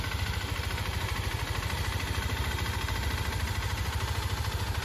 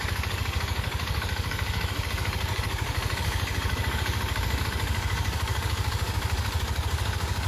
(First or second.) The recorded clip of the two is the first